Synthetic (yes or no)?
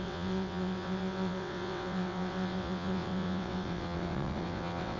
yes